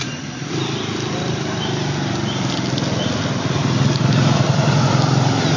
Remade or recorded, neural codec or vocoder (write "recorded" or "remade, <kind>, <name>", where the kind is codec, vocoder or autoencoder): recorded